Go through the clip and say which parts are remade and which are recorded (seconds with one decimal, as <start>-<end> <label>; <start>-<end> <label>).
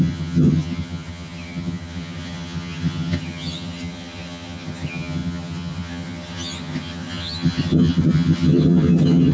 0.0-9.3 remade